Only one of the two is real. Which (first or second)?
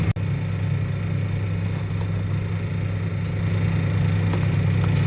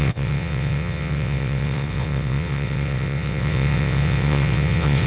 first